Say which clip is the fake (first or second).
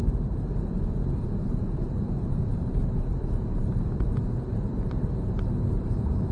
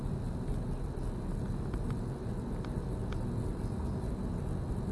first